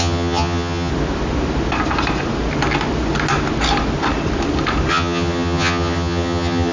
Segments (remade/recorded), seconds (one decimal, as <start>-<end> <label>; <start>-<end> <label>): 0.0-0.9 remade; 0.9-4.9 recorded; 4.9-6.7 remade